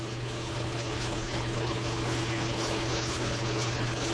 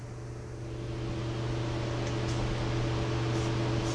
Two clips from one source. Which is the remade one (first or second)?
first